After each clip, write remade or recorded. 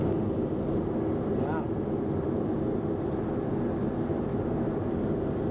recorded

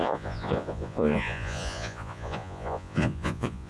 remade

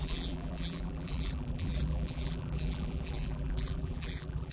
remade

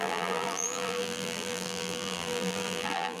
remade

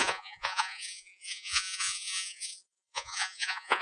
remade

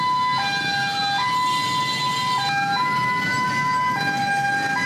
recorded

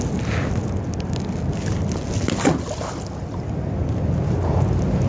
recorded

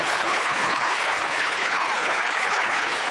remade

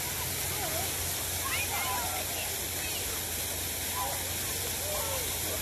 recorded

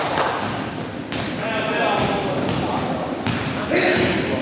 recorded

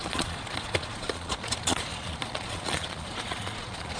remade